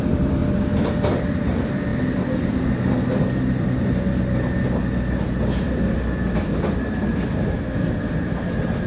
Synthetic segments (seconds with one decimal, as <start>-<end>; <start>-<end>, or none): 0.0-0.4; 1.1-8.9